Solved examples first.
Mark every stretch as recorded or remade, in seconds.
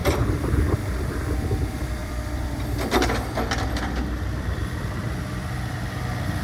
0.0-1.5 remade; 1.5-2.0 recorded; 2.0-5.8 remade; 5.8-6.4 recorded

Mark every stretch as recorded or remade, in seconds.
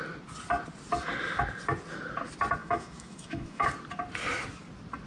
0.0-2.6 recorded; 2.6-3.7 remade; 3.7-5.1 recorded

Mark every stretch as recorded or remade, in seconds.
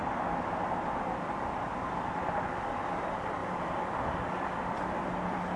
0.0-5.6 recorded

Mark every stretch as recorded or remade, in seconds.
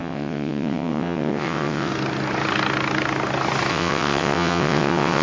0.0-1.9 remade; 1.9-3.7 recorded; 3.7-5.2 remade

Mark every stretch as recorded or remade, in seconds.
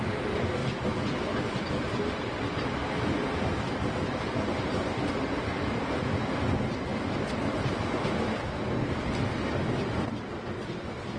0.0-11.2 recorded